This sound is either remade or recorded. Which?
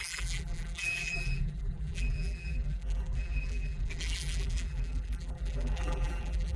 remade